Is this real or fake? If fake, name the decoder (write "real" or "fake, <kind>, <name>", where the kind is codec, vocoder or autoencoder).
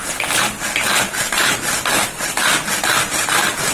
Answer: real